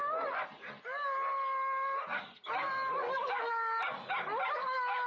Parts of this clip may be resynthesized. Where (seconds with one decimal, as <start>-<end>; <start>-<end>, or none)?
3.0-3.5